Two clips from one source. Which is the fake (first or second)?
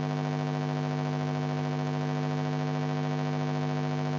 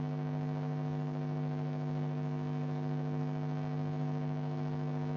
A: second